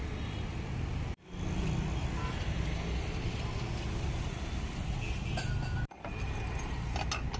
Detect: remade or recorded recorded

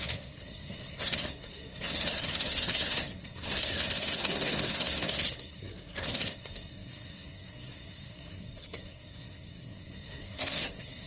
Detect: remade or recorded remade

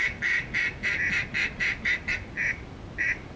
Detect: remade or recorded recorded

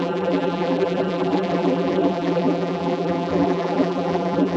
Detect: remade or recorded remade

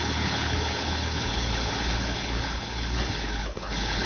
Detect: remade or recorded remade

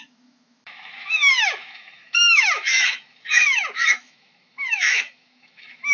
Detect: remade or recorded remade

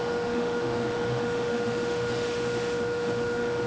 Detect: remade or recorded remade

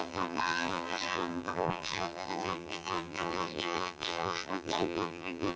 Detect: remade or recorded remade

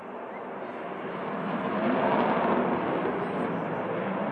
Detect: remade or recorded recorded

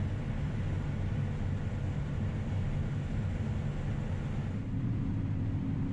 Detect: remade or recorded recorded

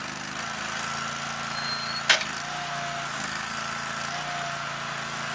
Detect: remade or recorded recorded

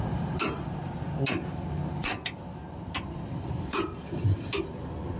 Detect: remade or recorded recorded